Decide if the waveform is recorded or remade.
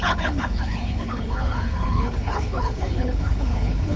remade